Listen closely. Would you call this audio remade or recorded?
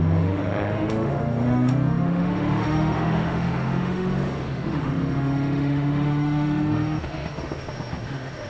remade